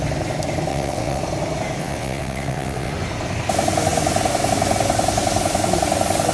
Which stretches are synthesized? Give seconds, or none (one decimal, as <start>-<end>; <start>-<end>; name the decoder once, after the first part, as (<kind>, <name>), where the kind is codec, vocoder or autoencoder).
0.7-1.2 (vocoder, WaveNeXt); 1.8-2.9